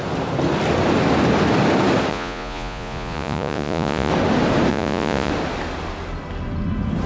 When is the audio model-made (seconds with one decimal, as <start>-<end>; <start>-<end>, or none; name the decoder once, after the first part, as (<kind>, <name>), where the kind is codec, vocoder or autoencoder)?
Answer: 2.1-4.1 (vocoder, Vocos); 4.7-5.3